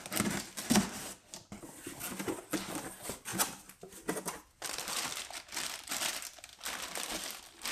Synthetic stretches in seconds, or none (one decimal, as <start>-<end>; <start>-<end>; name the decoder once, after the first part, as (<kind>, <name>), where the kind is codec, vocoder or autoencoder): none